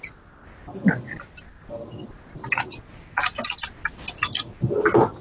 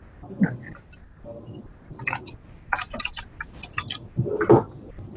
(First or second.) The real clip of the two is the first